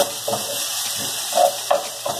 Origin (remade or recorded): recorded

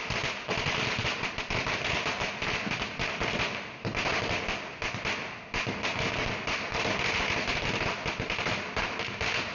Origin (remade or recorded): recorded